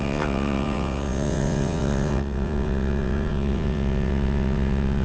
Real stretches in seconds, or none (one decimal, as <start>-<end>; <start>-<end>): none

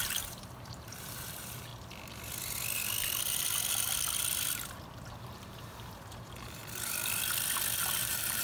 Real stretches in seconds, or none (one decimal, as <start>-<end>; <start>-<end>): 1.7-5.2; 6.6-7.9